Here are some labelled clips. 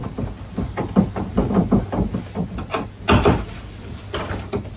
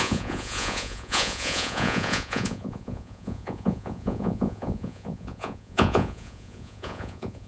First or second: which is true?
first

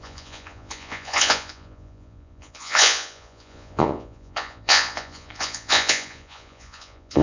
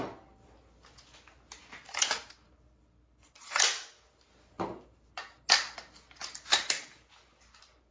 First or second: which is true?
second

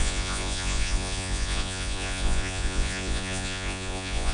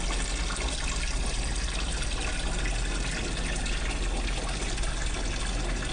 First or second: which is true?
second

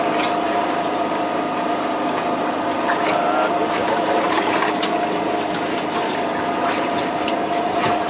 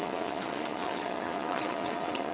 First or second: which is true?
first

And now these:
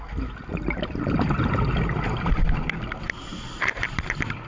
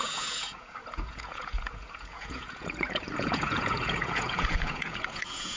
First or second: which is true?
first